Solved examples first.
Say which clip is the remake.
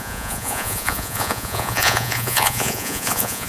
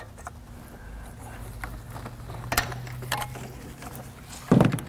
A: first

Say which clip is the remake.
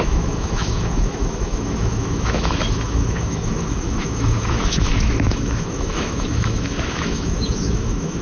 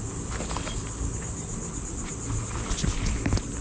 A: first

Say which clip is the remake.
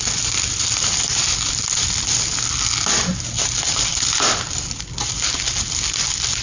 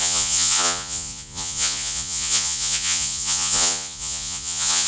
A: second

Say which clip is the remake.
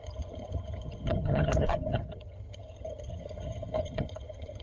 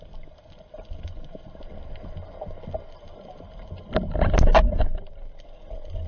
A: first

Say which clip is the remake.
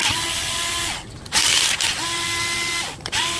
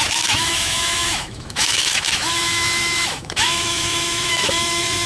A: second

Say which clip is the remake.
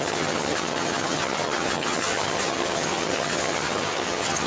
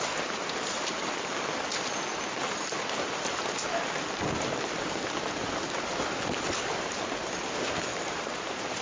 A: first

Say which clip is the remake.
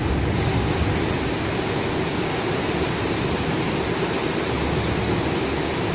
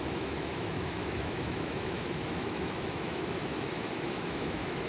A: second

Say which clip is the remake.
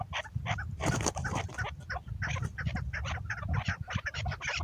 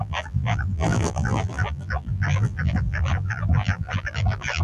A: second